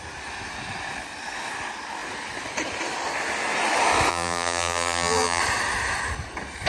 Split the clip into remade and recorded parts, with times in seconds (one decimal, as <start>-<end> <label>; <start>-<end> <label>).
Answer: 0.0-4.1 recorded; 4.1-5.4 remade; 5.4-6.7 recorded